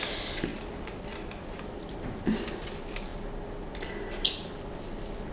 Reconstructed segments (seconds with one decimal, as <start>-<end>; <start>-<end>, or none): none